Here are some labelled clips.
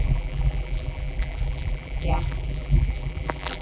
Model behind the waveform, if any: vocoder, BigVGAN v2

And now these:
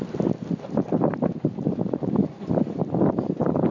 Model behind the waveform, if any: none